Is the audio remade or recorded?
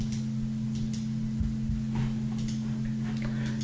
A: recorded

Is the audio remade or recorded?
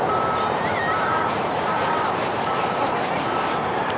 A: remade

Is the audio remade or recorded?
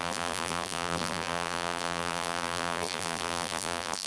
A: remade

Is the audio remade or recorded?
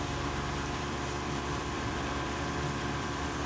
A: remade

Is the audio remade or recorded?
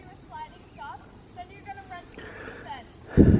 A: remade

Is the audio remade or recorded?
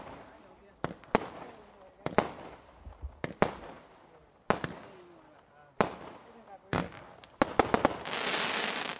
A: recorded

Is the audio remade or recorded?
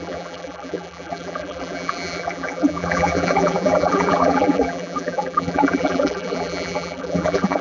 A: remade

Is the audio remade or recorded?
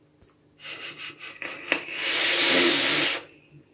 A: recorded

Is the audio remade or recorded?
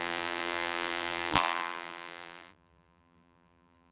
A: remade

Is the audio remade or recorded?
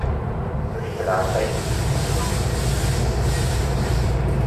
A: remade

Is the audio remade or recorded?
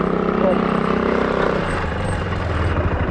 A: remade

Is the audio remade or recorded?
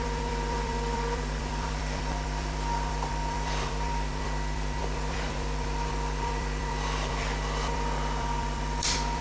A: remade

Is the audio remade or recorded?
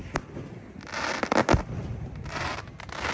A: recorded